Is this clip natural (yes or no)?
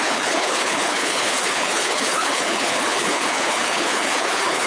no